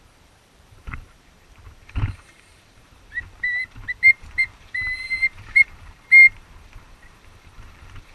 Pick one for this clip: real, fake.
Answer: fake